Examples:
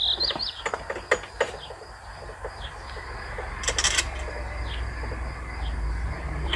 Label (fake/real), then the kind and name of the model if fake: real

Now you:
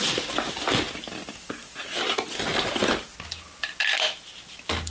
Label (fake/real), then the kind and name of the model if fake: real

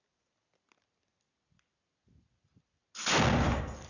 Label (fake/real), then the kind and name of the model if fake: real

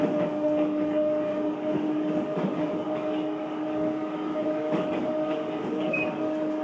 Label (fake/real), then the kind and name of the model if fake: fake, codec, DAC